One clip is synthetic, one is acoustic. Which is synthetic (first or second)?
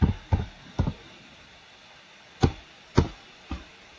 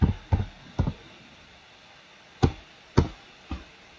first